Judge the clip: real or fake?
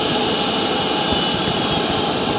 real